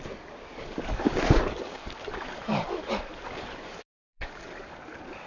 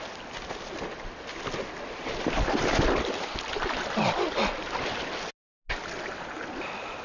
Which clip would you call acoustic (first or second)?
second